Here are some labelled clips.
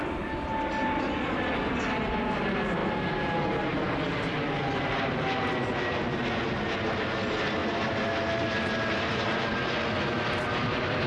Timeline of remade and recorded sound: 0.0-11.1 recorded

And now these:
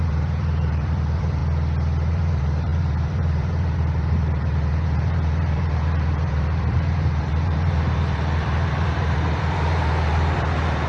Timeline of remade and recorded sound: 0.0-1.4 remade; 1.4-2.1 recorded; 2.1-10.9 remade

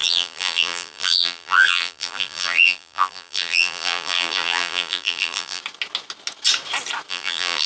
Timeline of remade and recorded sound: 0.0-5.6 remade; 5.6-7.1 recorded; 7.1-7.7 remade

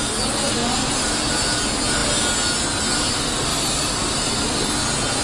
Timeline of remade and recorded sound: 0.0-3.5 recorded; 3.5-4.5 remade; 4.5-5.2 recorded

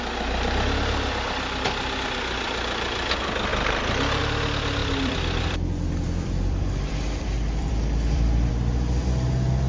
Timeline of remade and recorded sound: 0.0-3.5 recorded; 3.5-4.2 remade; 4.2-4.8 recorded; 4.8-8.5 remade; 8.5-9.7 recorded

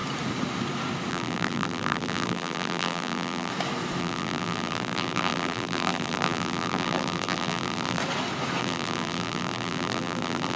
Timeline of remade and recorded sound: 0.0-1.1 recorded; 1.1-3.5 remade; 3.5-4.0 recorded; 4.0-8.0 remade; 8.0-8.6 recorded; 8.6-10.6 remade